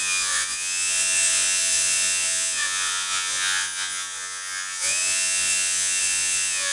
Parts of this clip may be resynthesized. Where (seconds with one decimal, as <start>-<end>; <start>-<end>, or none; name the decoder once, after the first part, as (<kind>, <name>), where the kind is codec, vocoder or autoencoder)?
0.0-6.7 (vocoder, Vocos)